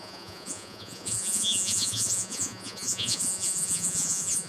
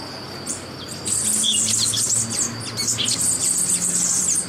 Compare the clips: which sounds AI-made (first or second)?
first